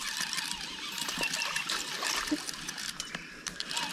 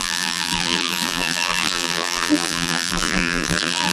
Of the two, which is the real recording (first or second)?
first